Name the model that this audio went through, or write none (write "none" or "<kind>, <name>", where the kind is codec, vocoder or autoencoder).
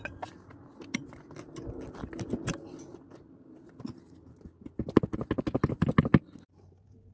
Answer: none